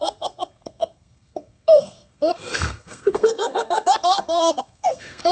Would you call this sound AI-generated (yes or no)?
yes